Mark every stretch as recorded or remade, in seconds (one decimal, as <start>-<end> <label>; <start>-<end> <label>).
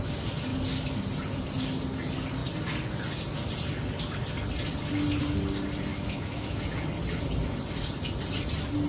0.0-5.9 recorded; 5.9-6.6 remade; 6.6-8.9 recorded